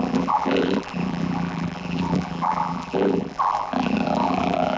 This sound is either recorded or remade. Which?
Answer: remade